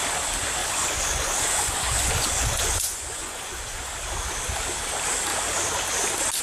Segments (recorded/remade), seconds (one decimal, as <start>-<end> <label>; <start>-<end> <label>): 0.0-0.6 recorded; 0.6-3.9 remade; 3.9-6.4 recorded